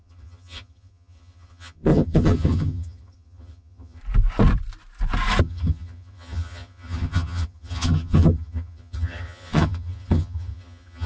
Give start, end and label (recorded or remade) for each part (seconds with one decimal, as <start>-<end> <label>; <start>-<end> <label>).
0.0-4.0 remade; 4.0-5.4 recorded; 5.4-11.1 remade